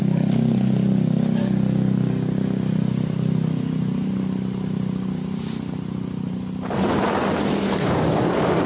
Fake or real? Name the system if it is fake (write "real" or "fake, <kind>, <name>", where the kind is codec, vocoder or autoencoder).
real